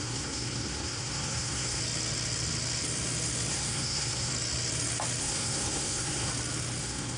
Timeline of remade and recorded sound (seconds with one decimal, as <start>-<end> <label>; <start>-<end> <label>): 0.0-1.8 remade; 1.8-3.5 recorded; 3.5-4.3 remade; 4.3-5.2 recorded; 5.2-6.3 remade; 6.3-6.8 recorded; 6.8-7.2 remade